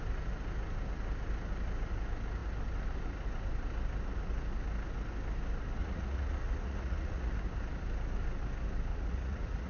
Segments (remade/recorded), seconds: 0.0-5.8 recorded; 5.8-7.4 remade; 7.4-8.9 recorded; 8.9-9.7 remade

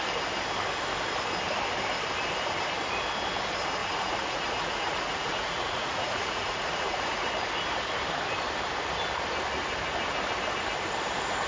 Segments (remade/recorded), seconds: 0.0-3.8 recorded; 3.8-7.3 remade; 7.3-11.5 recorded

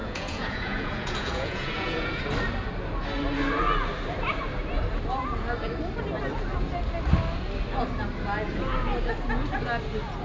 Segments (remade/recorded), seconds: 0.0-2.2 remade; 2.2-10.2 recorded